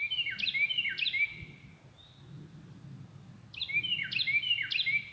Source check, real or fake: real